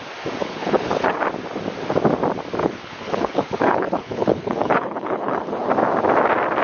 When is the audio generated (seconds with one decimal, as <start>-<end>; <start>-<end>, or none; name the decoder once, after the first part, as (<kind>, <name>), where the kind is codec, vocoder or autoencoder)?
0.4-1.2 (codec, HILCodec); 2.6-5.7